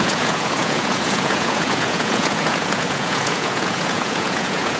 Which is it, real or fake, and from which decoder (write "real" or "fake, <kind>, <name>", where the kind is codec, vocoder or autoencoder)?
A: fake, vocoder, Vocos